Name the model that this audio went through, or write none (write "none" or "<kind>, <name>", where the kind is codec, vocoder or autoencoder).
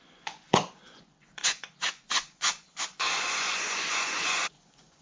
vocoder, Vocos